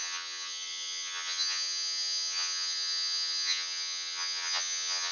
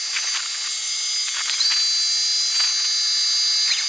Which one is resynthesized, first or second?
first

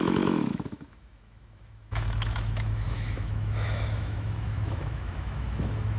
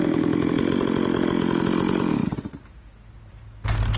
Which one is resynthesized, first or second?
first